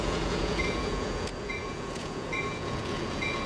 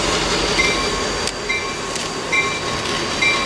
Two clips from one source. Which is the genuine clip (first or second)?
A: second